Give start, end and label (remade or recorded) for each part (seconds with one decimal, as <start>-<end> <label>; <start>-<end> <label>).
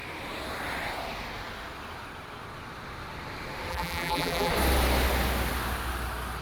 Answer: 0.0-3.7 recorded; 3.7-4.5 remade; 4.5-6.4 recorded